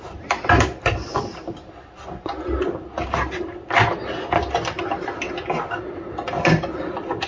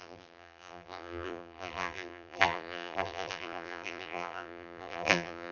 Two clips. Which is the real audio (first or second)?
first